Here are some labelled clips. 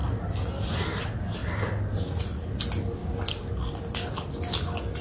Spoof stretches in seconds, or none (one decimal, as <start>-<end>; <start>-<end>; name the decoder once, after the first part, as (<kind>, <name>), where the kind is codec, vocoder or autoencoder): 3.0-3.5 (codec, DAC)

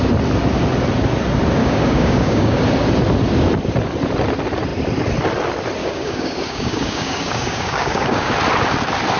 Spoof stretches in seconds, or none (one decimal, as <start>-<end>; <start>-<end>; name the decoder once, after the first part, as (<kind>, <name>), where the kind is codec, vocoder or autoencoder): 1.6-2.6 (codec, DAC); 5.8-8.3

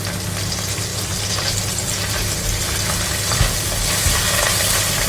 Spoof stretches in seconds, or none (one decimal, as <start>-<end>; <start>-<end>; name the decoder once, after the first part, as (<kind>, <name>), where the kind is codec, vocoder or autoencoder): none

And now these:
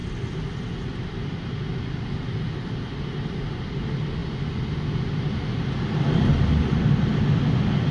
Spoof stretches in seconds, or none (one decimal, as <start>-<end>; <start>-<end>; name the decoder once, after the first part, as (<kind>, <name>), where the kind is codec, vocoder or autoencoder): none

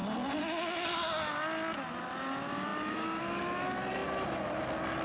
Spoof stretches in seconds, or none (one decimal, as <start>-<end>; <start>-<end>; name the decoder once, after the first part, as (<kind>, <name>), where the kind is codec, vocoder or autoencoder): none